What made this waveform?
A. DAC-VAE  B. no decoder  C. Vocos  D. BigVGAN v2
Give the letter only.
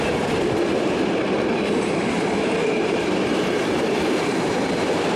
D